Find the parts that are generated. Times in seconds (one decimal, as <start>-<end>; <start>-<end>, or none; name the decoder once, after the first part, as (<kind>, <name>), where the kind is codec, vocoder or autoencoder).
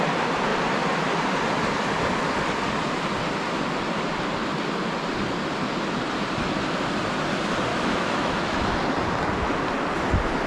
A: 7.7-8.8 (autoencoder, DAC-VAE)